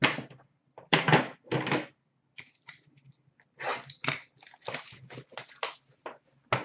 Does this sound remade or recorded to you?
recorded